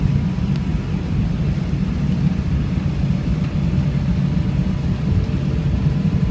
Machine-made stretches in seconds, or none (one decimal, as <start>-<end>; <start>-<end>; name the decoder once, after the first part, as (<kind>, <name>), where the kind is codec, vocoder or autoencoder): none